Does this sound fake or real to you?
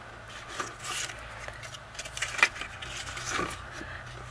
real